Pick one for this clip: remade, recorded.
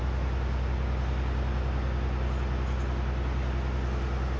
recorded